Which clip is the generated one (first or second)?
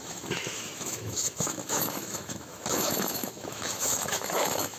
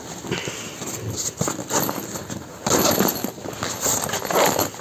first